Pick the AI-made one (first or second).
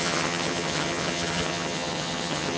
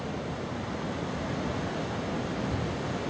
first